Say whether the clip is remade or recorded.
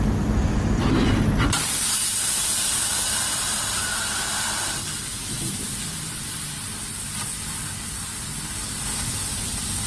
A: recorded